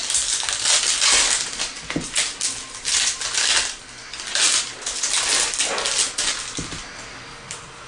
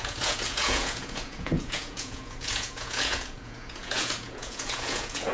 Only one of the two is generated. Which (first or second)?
second